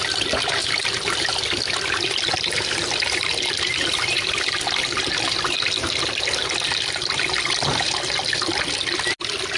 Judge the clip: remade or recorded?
recorded